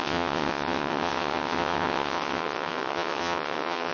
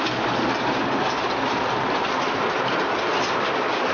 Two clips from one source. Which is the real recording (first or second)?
second